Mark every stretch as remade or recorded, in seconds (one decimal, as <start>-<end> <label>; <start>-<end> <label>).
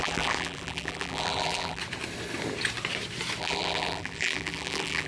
0.0-1.8 remade; 1.8-3.4 recorded; 3.4-5.1 remade